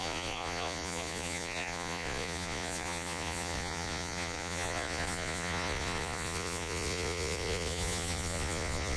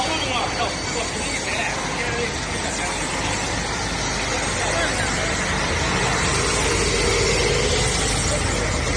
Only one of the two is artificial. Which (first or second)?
first